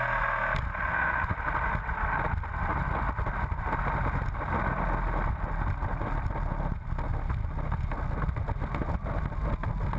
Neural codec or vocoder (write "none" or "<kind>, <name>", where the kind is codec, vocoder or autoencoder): none